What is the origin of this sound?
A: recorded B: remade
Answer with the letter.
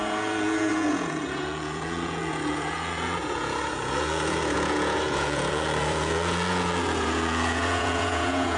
B